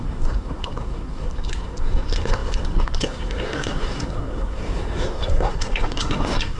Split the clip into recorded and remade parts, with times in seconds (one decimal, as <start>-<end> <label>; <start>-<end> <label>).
0.0-6.6 remade

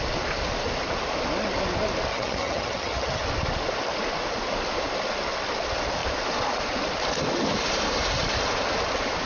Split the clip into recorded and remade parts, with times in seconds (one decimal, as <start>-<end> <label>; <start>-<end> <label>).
0.0-2.1 recorded; 2.1-3.2 remade; 3.2-9.3 recorded

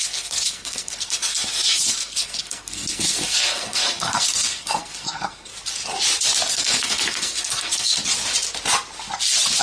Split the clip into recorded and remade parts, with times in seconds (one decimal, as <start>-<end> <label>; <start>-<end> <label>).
0.0-5.5 remade; 5.5-6.5 recorded; 6.5-7.9 remade; 7.9-9.6 recorded

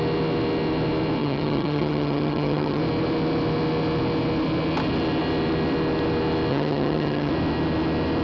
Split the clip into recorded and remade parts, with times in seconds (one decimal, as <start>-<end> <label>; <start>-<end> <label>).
0.0-1.2 recorded; 1.2-2.8 remade; 2.8-6.5 recorded; 6.5-7.3 remade; 7.3-8.2 recorded

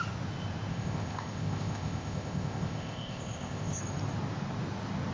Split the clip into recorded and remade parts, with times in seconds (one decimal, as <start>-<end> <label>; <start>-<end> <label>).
0.0-0.7 recorded; 0.7-3.8 remade; 3.8-5.1 recorded

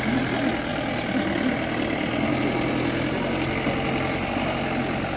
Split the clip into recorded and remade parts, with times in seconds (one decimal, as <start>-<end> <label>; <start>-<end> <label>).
0.0-5.2 recorded

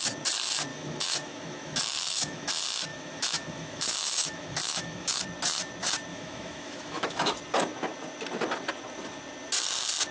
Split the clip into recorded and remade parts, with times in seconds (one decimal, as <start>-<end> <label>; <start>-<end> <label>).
0.0-0.7 recorded; 0.7-2.5 remade; 2.5-2.9 recorded; 2.9-5.2 remade; 5.2-6.1 recorded; 6.1-7.3 remade; 7.3-10.1 recorded

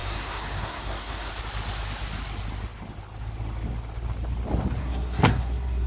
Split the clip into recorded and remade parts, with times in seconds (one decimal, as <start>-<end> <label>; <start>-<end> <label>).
0.0-1.3 remade; 1.3-4.8 recorded; 4.8-5.9 remade